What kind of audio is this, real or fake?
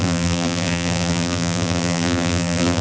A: fake